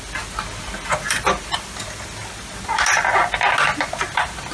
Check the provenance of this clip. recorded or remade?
recorded